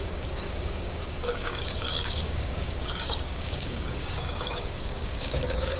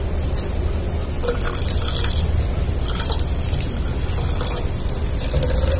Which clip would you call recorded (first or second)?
second